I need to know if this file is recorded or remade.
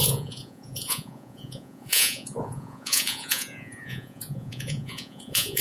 remade